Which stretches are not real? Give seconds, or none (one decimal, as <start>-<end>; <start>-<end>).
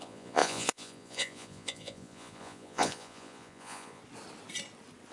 0.0-4.0